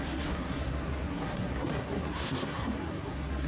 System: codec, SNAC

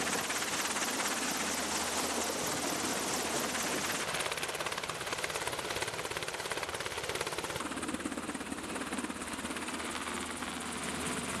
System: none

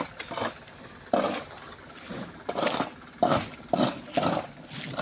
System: none